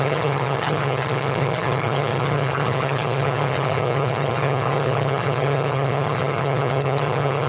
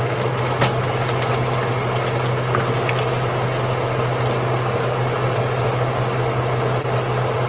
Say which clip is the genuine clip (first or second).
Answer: second